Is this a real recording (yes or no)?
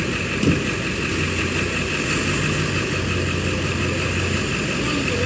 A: yes